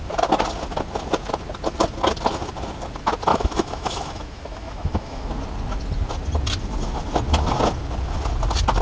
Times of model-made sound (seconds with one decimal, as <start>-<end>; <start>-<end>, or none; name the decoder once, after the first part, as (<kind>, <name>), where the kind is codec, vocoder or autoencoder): 3.3-5.3 (autoencoder, DAC-VAE)